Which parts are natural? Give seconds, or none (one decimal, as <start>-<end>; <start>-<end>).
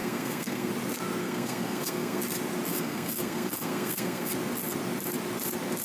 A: 0.7-1.2; 2.2-2.7; 4.3-5.8